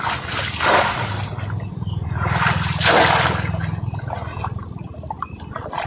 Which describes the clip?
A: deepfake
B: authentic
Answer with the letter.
B